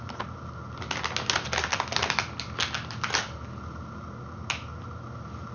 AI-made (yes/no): no